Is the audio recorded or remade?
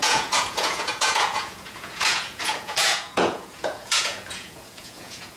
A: remade